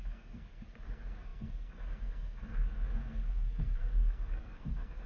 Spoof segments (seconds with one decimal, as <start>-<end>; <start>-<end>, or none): 0.0-5.1